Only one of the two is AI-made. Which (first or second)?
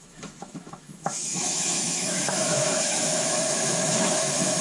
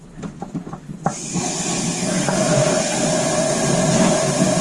first